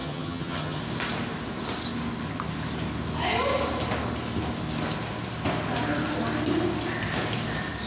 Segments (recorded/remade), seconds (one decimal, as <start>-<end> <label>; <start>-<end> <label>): 0.0-0.8 remade; 0.8-7.9 recorded